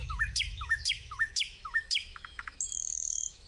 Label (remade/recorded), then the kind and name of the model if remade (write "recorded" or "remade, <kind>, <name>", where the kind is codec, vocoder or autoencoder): remade, autoencoder, DAC-VAE